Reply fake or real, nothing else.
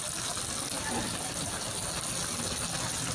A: real